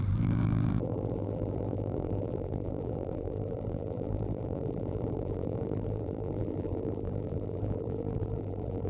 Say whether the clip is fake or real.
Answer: fake